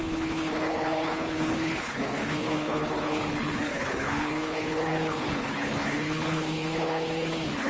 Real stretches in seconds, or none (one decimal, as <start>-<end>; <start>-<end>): none